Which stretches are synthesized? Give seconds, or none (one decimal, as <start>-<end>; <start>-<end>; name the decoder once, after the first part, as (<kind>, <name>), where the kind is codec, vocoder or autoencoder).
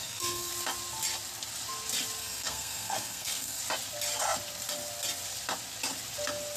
0.0-0.5 (codec, SNAC); 2.2-3.6